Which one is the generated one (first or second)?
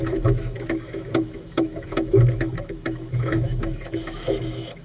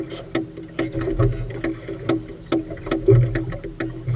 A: first